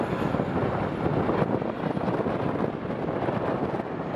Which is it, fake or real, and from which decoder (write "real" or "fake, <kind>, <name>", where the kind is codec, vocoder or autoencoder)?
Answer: real